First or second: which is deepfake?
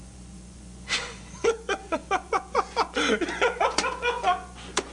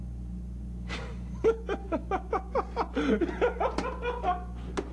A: first